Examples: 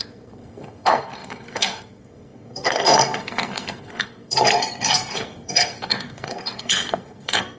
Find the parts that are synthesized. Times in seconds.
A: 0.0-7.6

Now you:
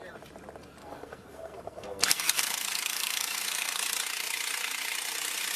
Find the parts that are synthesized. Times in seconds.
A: 0.8-3.8

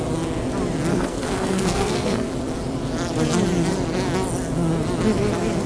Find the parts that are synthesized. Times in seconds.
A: 0.9-2.3

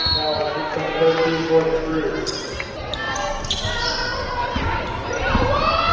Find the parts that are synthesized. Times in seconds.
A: none

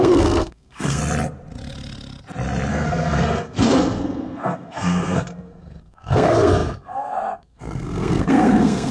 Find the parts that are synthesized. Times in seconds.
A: 0.0-1.0; 2.7-8.9

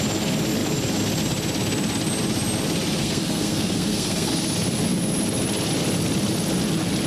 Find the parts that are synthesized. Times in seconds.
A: 3.0-4.3

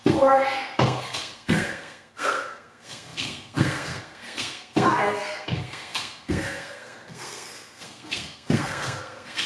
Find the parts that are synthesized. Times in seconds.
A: 0.0-9.5